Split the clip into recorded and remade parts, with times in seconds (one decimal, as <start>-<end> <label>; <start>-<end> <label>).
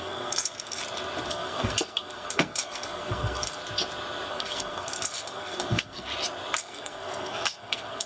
0.0-0.8 remade; 0.8-1.3 recorded; 1.3-3.6 remade; 3.6-4.3 recorded; 4.3-6.1 remade; 6.1-6.6 recorded; 6.6-8.1 remade